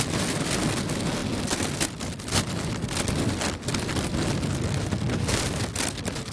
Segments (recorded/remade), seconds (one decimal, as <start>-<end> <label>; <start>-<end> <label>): 0.0-6.3 recorded